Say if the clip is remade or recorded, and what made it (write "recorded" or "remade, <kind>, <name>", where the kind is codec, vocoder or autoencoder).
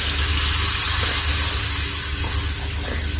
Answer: recorded